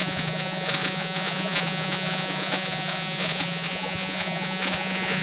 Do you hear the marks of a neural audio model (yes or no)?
yes